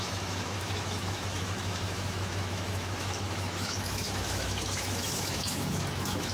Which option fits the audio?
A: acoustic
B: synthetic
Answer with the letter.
B